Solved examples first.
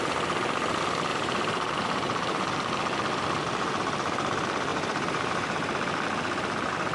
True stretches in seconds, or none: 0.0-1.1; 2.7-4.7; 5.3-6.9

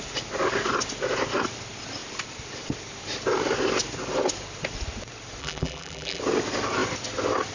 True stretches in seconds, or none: 0.0-5.4; 6.2-7.5